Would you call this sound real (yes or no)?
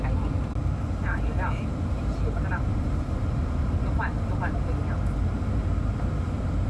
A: yes